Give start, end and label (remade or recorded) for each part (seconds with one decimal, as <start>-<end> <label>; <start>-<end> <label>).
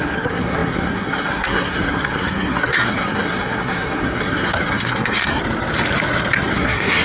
0.0-5.4 remade; 5.4-6.5 recorded; 6.5-7.0 remade